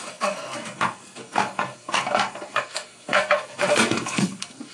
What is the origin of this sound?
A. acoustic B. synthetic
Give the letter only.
B